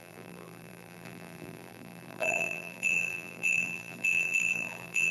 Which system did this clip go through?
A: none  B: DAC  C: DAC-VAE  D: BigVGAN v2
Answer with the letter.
D